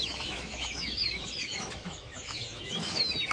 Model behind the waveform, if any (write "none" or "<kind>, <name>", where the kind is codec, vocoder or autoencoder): autoencoder, DAC-VAE